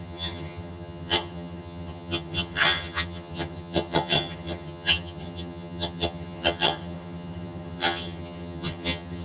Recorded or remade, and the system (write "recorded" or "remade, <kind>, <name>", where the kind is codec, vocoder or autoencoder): remade, vocoder, HiFi-GAN